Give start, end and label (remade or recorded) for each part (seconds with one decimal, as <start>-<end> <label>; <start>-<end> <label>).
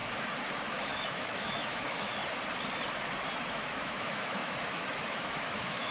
0.0-0.7 recorded; 0.7-2.2 remade; 2.2-3.5 recorded; 3.5-5.9 remade